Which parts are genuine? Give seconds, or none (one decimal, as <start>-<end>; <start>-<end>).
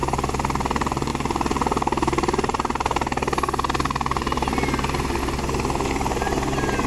0.0-6.9